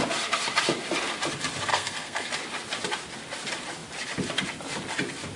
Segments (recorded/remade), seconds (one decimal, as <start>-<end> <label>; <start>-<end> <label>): 0.0-1.7 recorded; 1.7-2.3 remade; 2.3-5.4 recorded